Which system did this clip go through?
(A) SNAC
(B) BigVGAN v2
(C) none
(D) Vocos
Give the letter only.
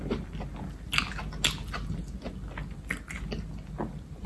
C